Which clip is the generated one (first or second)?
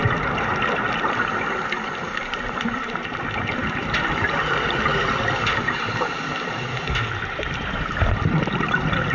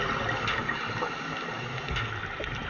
first